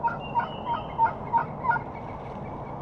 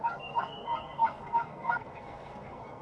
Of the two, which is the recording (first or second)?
first